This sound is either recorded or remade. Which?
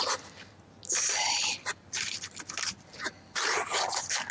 recorded